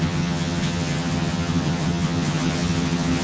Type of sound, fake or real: fake